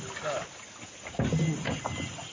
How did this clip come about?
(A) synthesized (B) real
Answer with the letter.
B